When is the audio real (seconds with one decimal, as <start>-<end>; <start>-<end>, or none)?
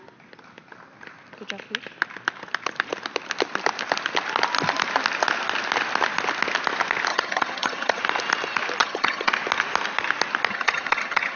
0.0-7.1; 8.0-8.8; 9.3-10.5